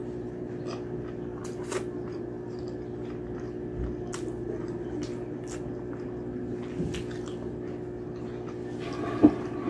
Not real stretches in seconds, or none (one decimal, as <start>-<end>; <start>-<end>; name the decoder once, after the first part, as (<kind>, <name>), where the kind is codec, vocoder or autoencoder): none